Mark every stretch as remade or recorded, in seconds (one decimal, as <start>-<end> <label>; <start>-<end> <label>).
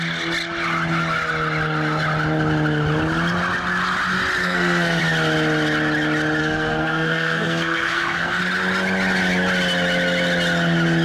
0.0-4.4 recorded; 4.4-5.0 remade; 5.0-6.4 recorded; 6.4-8.4 remade; 8.4-11.0 recorded